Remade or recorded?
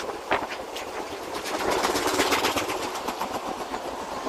remade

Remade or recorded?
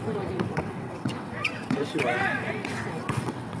remade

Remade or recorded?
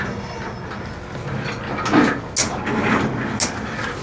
recorded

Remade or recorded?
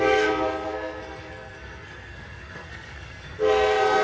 remade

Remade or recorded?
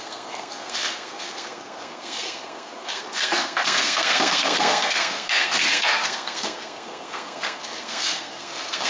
remade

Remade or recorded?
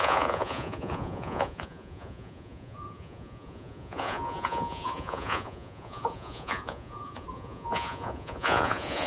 remade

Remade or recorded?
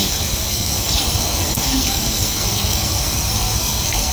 remade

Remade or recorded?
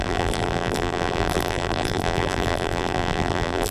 remade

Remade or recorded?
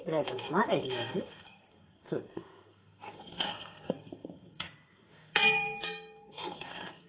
remade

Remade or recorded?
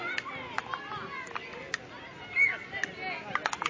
recorded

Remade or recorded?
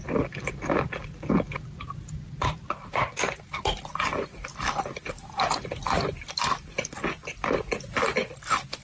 recorded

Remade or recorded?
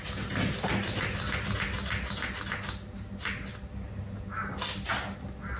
recorded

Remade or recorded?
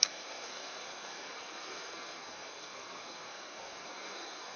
remade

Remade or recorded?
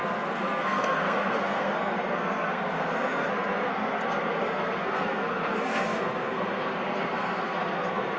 remade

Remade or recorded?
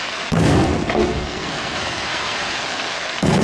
remade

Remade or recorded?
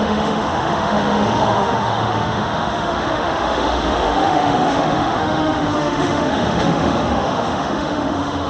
remade